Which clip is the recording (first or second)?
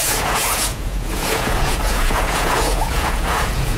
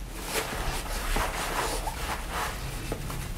second